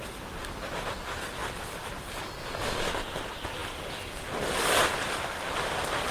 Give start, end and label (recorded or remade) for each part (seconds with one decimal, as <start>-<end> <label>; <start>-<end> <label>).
0.0-6.1 recorded